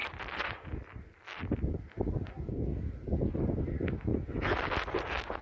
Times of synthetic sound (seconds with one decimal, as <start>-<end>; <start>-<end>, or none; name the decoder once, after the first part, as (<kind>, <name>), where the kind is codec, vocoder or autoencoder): none